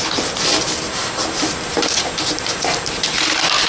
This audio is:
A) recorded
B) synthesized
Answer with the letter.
A